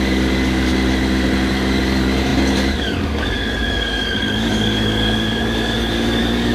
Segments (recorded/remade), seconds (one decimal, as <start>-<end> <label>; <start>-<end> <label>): 0.0-0.7 remade; 0.7-1.5 recorded; 1.5-6.5 remade